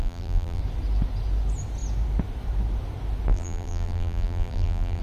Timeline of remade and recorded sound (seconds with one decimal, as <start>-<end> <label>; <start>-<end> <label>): 0.0-0.6 remade; 0.6-3.3 recorded; 3.3-5.0 remade